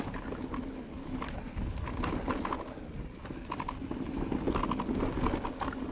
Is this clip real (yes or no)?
yes